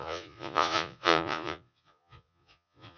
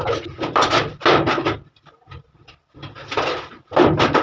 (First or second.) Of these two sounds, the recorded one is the second